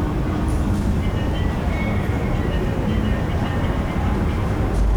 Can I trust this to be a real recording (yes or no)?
no